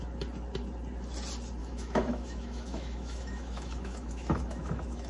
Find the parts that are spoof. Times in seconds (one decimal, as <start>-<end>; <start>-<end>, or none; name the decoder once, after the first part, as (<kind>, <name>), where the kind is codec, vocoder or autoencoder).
1.6-5.1 (autoencoder, DAC-VAE)